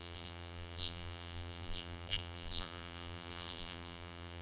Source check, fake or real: fake